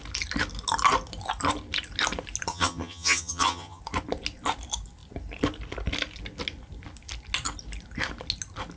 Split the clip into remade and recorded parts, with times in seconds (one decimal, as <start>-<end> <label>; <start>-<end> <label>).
0.0-2.5 recorded; 2.5-3.8 remade; 3.8-8.8 recorded